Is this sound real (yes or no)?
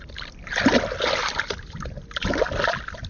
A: yes